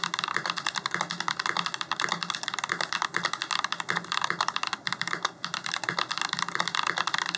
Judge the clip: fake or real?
real